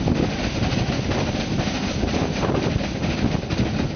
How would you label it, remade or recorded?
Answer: recorded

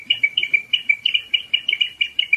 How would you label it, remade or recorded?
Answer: remade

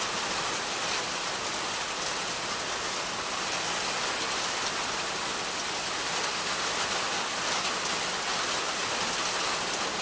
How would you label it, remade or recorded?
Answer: recorded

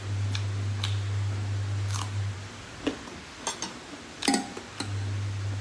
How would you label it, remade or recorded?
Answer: recorded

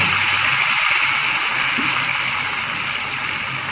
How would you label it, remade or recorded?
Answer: recorded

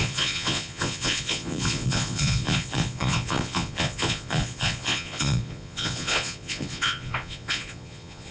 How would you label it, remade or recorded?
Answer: remade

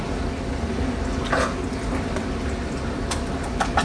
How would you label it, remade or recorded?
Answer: recorded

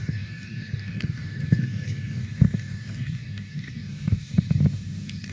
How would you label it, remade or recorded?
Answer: remade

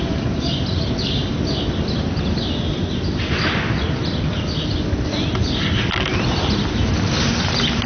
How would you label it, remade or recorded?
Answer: recorded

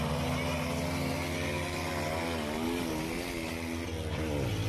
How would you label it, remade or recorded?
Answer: recorded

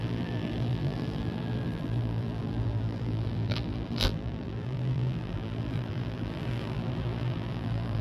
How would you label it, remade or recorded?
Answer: remade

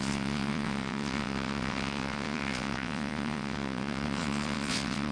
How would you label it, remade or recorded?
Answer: remade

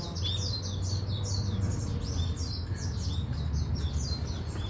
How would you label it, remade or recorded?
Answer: recorded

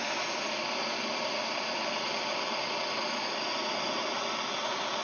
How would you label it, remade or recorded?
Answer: recorded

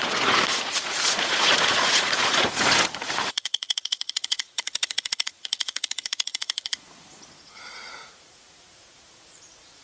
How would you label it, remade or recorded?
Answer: remade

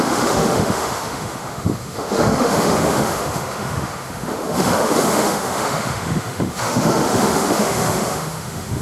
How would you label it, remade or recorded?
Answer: remade